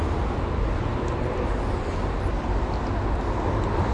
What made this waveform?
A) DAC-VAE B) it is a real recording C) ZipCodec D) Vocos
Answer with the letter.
B